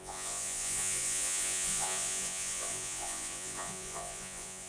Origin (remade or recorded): remade